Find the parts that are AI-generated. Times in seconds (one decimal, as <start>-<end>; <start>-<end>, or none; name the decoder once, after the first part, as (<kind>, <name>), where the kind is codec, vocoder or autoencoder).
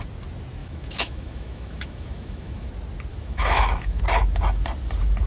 0.6-2.7 (autoencoder, DAC-VAE); 3.1-4.0